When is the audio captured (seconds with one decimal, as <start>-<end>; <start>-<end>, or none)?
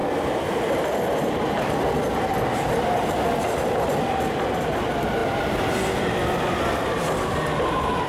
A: 0.0-8.1